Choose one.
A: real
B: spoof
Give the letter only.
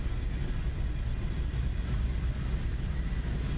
A